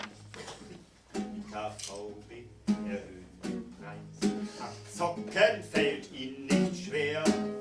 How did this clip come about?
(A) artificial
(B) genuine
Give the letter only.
B